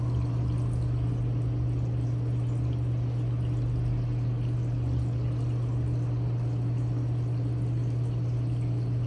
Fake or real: real